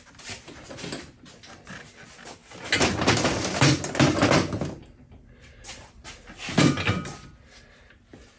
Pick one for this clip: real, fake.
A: real